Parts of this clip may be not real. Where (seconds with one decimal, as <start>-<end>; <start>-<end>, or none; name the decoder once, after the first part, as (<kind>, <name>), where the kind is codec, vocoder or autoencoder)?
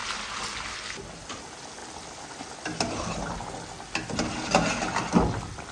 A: none